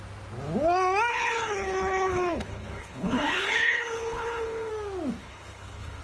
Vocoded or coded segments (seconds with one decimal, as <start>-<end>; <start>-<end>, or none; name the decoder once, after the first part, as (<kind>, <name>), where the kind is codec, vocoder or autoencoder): 1.1-4.7 (codec, HILCodec); 5.2-6.0